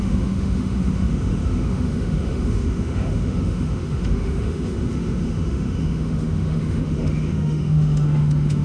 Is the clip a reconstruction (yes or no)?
yes